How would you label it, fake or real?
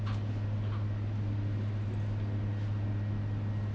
real